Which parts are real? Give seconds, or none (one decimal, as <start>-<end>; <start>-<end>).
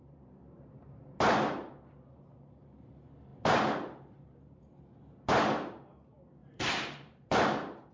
0.0-3.3; 4.6-6.4